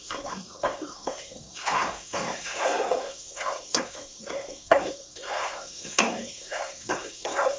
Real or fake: fake